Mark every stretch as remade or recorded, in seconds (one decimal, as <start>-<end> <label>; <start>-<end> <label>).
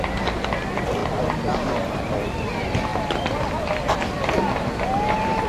0.0-5.5 recorded